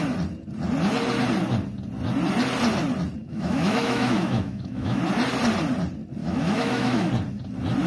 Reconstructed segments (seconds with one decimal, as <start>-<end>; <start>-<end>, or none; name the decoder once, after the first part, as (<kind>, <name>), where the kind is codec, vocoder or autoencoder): 3.2-5.0 (autoencoder, DAC-VAE); 6.2-7.1